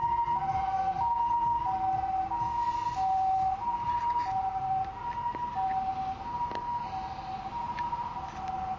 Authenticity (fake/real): real